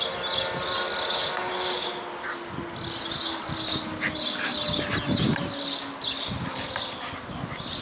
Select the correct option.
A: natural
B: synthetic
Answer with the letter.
A